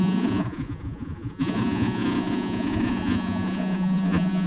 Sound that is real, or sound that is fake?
fake